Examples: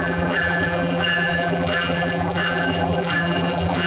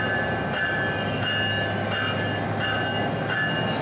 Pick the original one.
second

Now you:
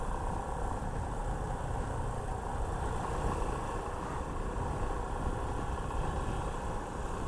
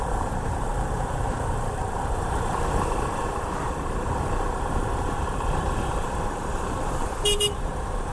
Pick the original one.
first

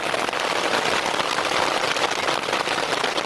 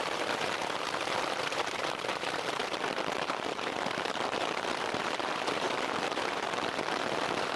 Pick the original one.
first